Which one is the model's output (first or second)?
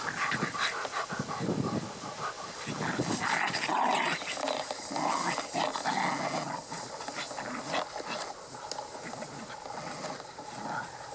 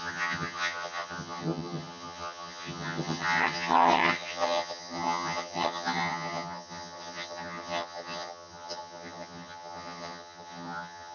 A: second